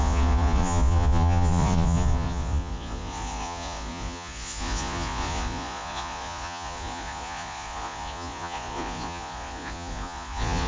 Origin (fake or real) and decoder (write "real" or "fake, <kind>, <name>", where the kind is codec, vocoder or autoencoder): fake, vocoder, Vocos